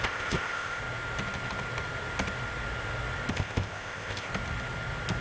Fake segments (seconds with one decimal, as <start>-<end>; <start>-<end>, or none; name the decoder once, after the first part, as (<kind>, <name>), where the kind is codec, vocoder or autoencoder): 0.0-0.8 (codec, ZipCodec); 3.3-4.3

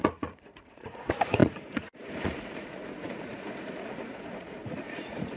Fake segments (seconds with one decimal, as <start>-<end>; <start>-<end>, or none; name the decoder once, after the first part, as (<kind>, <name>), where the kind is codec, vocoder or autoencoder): 0.0-5.4 (vocoder, Vocos)

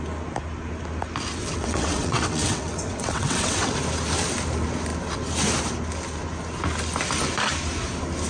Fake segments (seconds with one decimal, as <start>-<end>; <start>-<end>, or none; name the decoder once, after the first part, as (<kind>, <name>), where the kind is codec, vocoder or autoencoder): 1.4-3.7 (vocoder, WaveNeXt)

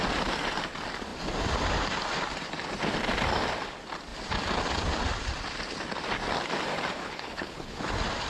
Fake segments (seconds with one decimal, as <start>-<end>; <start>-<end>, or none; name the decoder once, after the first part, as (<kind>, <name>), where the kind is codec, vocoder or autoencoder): 7.0-7.9 (codec, HILCodec)

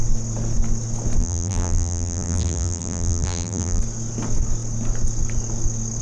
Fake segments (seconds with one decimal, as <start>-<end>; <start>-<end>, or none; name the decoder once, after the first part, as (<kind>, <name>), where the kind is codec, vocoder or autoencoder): 1.2-3.8 (vocoder, BigVGAN v2)

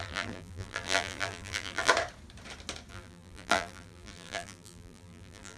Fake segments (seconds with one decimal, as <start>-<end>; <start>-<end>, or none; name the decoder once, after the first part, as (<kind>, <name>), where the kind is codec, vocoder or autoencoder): 0.0-1.9 (vocoder, BigVGAN v2); 2.9-5.6

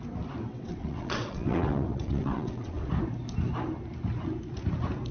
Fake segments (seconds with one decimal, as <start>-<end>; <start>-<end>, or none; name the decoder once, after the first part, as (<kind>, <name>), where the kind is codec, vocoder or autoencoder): 0.5-2.9 (vocoder, WaveNeXt)

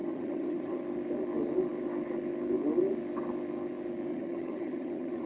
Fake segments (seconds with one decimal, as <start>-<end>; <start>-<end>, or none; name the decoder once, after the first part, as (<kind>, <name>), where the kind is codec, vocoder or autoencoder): 0.0-0.8 (vocoder, HiFi-GAN); 4.1-5.3